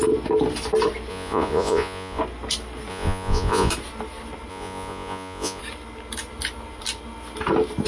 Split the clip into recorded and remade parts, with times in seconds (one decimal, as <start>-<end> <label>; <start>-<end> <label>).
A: 0.0-1.1 recorded; 1.1-2.2 remade; 2.2-2.9 recorded; 2.9-3.7 remade; 3.7-4.5 recorded; 4.5-5.6 remade; 5.6-7.9 recorded